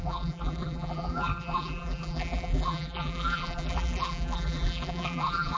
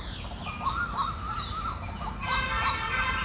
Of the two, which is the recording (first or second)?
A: second